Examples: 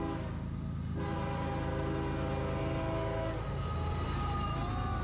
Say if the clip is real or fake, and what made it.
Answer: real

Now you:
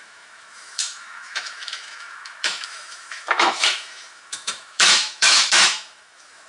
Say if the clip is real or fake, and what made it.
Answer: fake, autoencoder, DAC-VAE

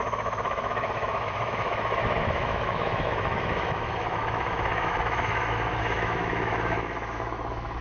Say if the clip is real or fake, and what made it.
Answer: fake, autoencoder, DAC-VAE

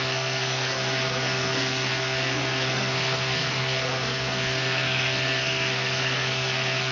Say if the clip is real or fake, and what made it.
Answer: fake, codec, SNAC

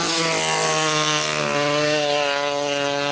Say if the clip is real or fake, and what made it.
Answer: real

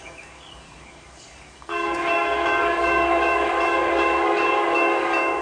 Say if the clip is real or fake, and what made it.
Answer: fake, codec, DAC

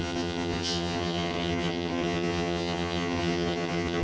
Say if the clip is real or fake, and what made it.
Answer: fake, vocoder, HiFi-GAN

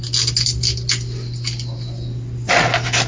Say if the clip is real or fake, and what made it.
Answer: real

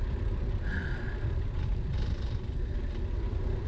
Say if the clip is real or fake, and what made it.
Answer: fake, vocoder, BigVGAN v2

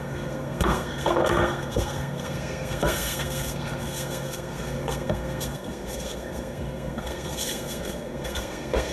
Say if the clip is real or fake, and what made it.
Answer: fake, codec, SNAC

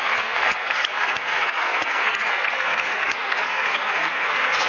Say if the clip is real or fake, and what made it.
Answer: fake, codec, SNAC